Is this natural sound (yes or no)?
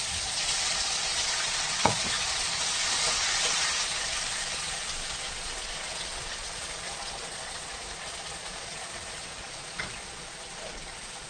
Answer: no